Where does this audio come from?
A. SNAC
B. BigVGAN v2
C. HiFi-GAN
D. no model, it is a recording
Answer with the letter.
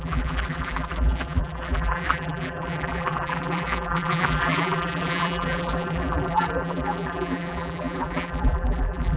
B